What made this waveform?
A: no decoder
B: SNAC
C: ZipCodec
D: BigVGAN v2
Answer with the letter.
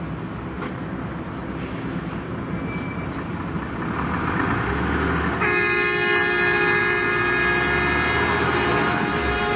A